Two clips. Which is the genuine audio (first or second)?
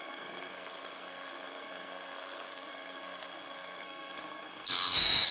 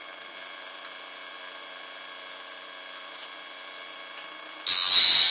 second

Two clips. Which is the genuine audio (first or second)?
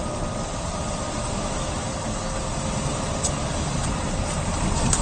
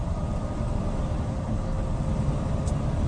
second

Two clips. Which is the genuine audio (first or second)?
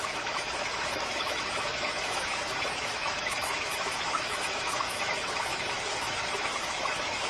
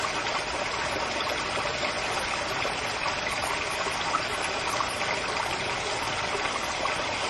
second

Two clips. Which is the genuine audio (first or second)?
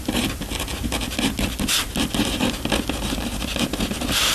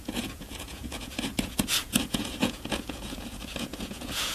first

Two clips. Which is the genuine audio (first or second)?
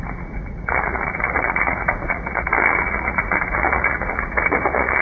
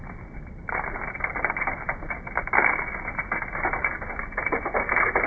second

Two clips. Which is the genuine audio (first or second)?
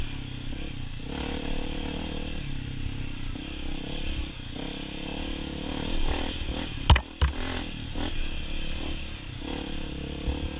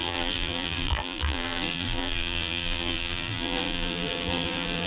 first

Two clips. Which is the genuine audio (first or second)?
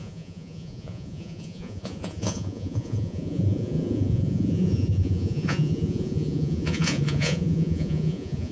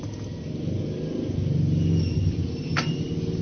second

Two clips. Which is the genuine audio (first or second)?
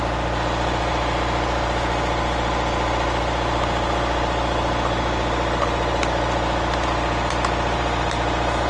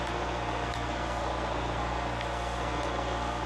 first